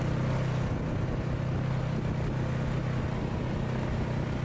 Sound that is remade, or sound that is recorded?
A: recorded